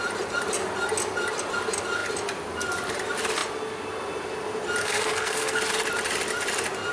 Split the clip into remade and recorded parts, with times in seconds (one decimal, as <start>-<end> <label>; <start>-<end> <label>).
0.0-4.8 recorded; 4.8-5.6 remade; 5.6-6.9 recorded